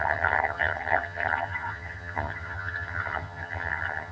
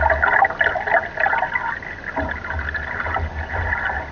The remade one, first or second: first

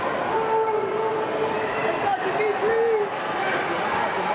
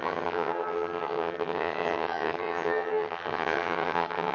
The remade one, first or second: second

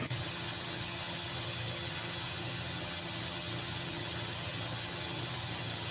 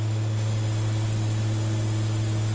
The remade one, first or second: first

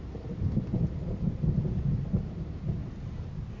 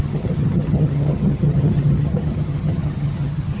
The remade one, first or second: second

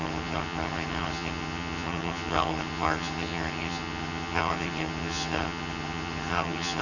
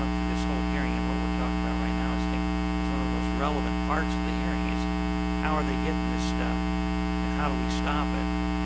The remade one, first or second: first